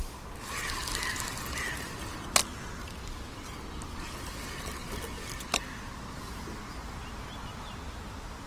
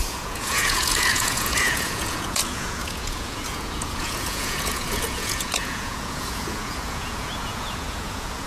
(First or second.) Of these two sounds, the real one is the first